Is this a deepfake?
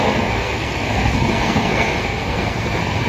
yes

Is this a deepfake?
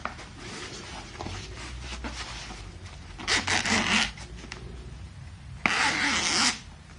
no